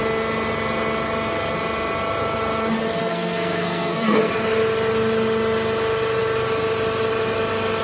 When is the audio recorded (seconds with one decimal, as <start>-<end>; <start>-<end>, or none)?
0.0-3.0; 4.3-7.8